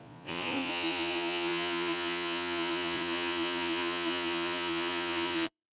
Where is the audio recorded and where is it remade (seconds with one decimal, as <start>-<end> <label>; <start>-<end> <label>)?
0.0-5.8 remade